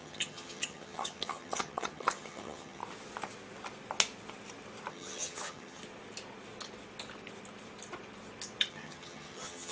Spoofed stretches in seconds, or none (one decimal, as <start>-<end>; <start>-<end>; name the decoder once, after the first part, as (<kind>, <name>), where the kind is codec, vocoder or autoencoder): 0.0-2.8 (vocoder, HiFi-GAN); 4.9-5.8; 8.7-9.7